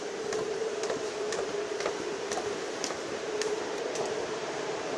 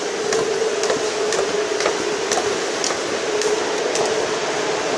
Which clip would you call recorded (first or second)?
second